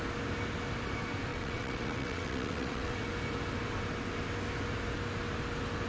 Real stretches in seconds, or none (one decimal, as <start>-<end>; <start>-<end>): 0.0-1.3; 3.0-5.9